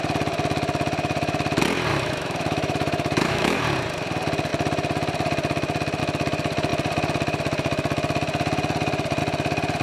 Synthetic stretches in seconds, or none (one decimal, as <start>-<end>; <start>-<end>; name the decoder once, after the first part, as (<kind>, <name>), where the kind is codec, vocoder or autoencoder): 1.9-3.6 (autoencoder, DAC-VAE)